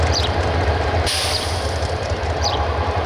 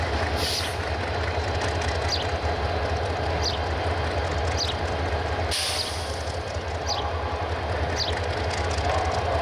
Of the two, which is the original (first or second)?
second